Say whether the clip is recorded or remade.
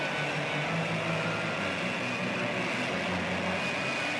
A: recorded